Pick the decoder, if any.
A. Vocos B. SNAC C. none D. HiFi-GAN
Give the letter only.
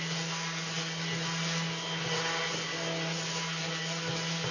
C